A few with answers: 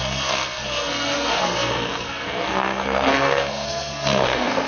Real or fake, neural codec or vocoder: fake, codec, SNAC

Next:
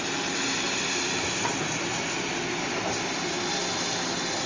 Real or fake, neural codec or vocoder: real